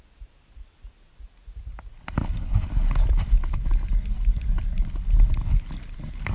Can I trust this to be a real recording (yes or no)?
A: yes